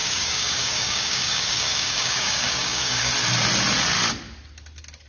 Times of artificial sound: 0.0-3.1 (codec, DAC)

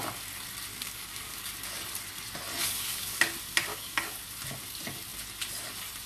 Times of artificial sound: 0.7-1.5 (codec, DAC); 2.6-3.2; 3.7-4.2

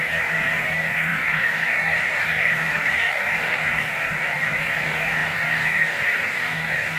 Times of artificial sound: 0.0-7.0 (codec, DAC)

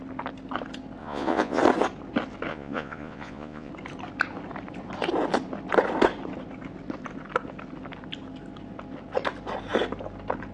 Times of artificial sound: 1.0-1.6 (vocoder, Vocos); 2.5-3.7